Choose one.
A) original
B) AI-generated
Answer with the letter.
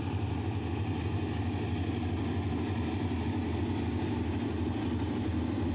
A